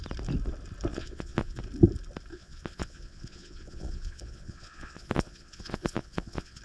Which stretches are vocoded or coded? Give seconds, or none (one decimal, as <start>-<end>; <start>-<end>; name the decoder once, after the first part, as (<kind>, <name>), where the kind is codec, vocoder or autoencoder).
0.9-1.6 (vocoder, Vocos); 2.3-6.6

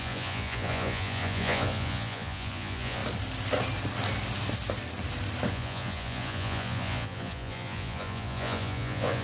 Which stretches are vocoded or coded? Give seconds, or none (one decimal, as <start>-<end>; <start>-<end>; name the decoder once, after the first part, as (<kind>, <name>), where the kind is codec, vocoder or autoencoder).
0.0-3.0 (vocoder, Vocos); 5.5-9.2

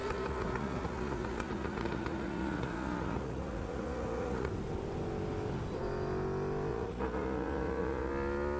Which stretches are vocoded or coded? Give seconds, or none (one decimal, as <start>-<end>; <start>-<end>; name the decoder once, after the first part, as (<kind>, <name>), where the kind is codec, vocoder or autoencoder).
0.0-4.5 (vocoder, Vocos); 6.7-8.1

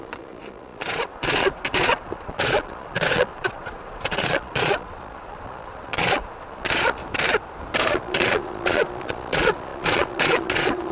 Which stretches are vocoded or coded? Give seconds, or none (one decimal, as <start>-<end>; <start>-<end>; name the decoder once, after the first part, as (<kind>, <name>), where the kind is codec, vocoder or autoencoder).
0.0-7.0 (vocoder, Vocos); 7.8-10.9

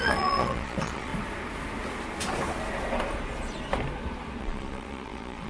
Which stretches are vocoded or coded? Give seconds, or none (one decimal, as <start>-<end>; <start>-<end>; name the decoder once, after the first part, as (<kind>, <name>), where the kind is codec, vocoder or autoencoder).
0.0-1.1 (vocoder, Vocos); 4.4-5.5